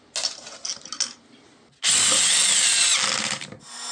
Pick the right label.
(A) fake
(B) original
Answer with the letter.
B